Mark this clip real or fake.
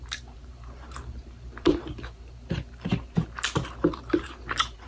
fake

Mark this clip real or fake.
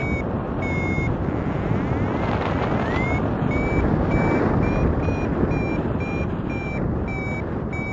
real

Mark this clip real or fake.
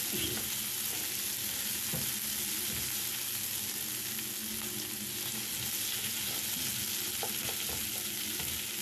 real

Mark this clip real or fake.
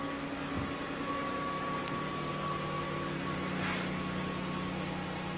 real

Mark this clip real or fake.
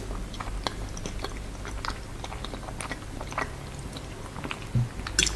real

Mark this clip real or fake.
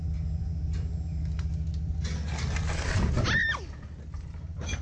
real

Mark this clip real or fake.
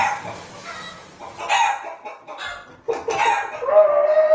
real